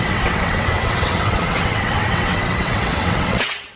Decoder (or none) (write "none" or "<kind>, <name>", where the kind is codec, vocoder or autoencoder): vocoder, WaveNeXt